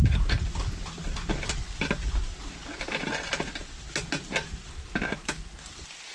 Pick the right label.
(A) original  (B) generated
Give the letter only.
A